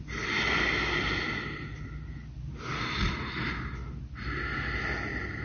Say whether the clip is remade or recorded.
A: recorded